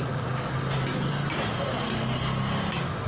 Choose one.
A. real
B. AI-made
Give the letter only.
A